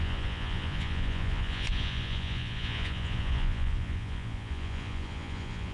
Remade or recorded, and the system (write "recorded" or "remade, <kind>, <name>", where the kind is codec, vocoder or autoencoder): remade, vocoder, Vocos